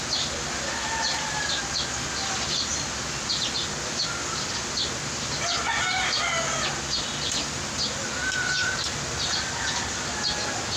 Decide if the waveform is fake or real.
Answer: real